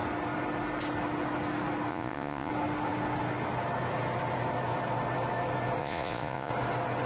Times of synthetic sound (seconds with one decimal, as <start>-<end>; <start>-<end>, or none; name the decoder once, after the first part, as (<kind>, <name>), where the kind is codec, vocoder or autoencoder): 1.9-2.5 (vocoder, Vocos); 5.8-6.5

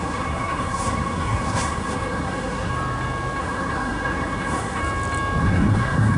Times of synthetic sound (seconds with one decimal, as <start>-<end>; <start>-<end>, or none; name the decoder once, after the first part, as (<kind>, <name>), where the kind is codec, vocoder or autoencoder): 0.0-2.7 (codec, SNAC); 3.4-4.8; 5.4-6.2

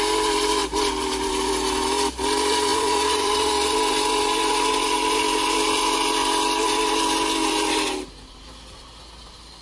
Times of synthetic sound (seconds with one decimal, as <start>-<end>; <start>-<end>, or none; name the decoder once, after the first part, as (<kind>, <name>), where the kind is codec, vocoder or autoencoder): 0.6-1.3 (vocoder, BigVGAN v2); 2.7-3.5

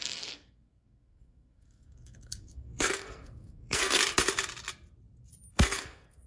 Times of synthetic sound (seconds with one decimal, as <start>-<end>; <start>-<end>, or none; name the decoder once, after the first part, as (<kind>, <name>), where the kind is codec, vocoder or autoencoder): 0.0-4.0 (codec, SNAC); 5.5-6.3

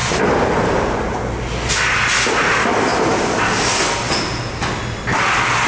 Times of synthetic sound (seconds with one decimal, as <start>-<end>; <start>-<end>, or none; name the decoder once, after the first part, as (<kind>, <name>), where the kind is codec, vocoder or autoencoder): none